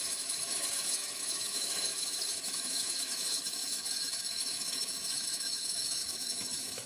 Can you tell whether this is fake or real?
fake